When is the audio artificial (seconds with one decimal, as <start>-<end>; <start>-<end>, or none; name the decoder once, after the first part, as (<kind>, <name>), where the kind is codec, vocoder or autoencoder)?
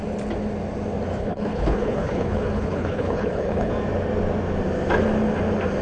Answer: 1.2-3.7 (codec, HILCodec)